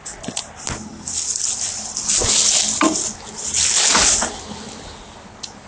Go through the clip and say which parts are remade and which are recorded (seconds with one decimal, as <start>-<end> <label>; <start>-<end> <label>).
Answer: 0.0-5.7 recorded